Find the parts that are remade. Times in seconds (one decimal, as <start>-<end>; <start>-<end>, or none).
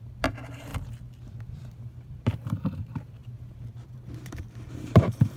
0.0-0.7; 1.7-5.4